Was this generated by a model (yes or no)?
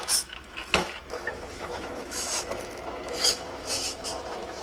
yes